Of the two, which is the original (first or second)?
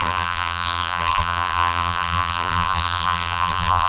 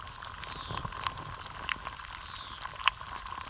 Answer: second